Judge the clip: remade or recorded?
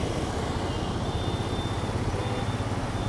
recorded